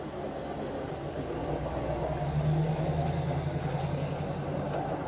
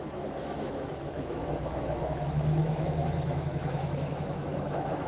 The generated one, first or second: second